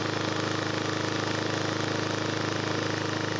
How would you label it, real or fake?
real